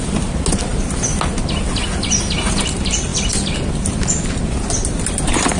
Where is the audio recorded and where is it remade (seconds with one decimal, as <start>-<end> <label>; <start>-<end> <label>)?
0.0-5.6 recorded